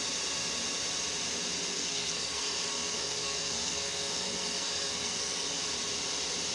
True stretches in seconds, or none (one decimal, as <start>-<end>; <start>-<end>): 0.0-1.7; 5.6-6.5